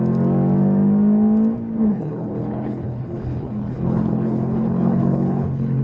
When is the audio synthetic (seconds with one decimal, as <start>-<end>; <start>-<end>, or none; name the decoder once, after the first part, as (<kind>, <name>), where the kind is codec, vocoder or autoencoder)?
1.9-5.8 (codec, HILCodec)